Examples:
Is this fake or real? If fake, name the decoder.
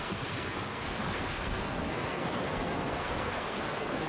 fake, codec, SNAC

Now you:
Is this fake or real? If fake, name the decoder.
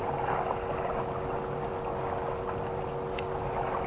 real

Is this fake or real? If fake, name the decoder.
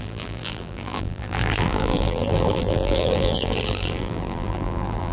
fake, vocoder, BigVGAN v2